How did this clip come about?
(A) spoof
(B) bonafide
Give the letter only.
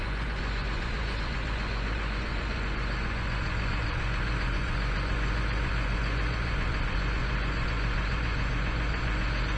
A